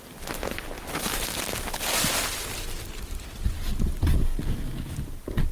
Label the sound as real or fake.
real